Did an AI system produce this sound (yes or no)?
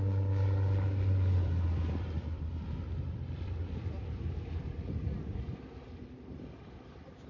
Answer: yes